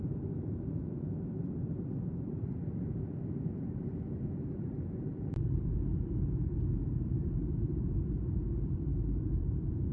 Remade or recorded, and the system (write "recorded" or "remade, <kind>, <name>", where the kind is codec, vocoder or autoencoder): remade, vocoder, BigVGAN v2